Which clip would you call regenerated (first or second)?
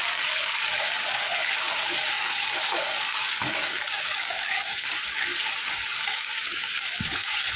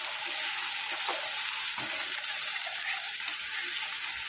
first